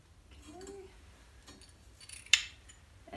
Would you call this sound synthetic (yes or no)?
no